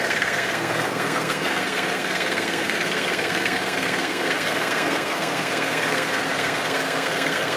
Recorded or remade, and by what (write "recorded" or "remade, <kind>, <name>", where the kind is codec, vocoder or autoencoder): remade, codec, SNAC